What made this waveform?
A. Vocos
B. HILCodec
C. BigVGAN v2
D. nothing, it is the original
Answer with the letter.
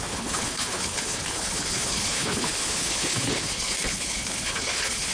B